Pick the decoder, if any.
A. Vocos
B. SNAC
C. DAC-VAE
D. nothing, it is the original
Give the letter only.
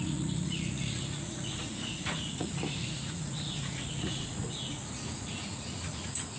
A